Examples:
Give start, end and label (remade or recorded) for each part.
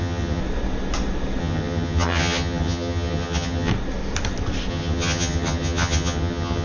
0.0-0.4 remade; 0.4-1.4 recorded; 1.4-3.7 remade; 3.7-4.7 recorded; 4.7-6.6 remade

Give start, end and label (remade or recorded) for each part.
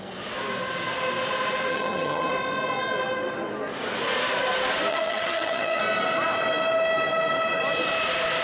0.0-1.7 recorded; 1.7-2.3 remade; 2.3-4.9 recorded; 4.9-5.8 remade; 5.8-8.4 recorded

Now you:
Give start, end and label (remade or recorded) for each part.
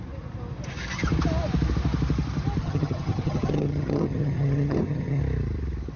0.0-2.6 recorded; 2.6-5.2 remade; 5.2-6.0 recorded